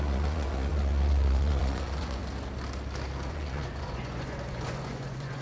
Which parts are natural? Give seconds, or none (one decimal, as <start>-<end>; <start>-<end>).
2.2-3.3